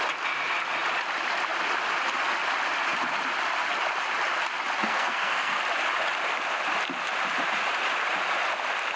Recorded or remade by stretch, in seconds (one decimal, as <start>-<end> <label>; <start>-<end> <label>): 0.0-4.8 recorded; 4.8-5.6 remade; 5.6-9.0 recorded